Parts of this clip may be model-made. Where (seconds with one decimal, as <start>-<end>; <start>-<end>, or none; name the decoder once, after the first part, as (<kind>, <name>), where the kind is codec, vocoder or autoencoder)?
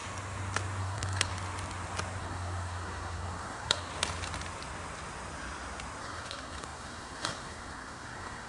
0.8-1.3 (codec, SNAC); 2.2-3.9; 6.0-8.5